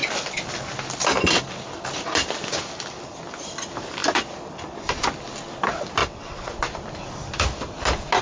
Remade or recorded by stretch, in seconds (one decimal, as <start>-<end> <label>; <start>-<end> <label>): 0.0-6.0 recorded; 6.0-6.5 remade; 6.5-8.2 recorded